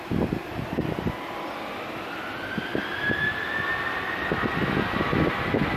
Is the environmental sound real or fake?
real